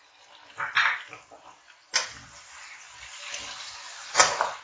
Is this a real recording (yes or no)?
yes